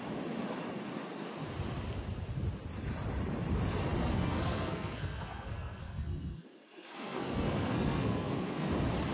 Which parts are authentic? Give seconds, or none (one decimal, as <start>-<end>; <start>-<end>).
0.0-4.0; 8.7-9.1